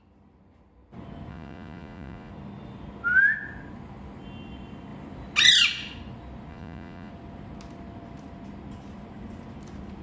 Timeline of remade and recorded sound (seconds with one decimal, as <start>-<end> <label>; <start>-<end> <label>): 0.0-1.3 recorded; 1.3-2.3 remade; 2.3-6.5 recorded; 6.5-7.1 remade; 7.1-10.0 recorded